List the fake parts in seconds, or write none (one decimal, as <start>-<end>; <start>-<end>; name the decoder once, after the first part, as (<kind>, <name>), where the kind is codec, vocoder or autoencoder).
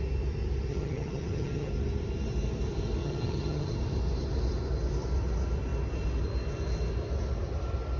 0.7-1.7 (vocoder, HiFi-GAN); 3.0-3.7